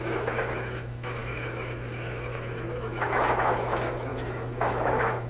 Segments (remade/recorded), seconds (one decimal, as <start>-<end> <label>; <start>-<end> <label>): 0.0-5.3 remade